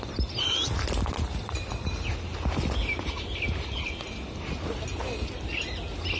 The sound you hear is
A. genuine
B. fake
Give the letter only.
A